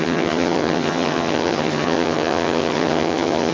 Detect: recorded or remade remade